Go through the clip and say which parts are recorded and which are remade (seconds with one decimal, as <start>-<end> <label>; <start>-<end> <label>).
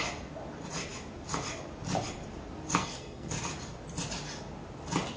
0.0-2.8 recorded; 2.8-3.3 remade; 3.3-5.2 recorded